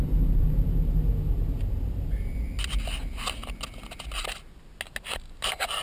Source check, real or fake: real